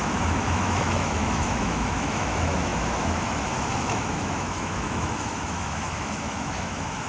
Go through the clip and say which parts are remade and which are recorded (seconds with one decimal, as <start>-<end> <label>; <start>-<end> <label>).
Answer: 0.0-7.1 remade